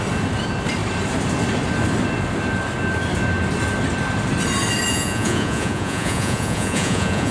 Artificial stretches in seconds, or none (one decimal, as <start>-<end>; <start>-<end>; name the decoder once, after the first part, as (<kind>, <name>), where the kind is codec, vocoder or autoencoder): 4.9-7.3 (vocoder, Vocos)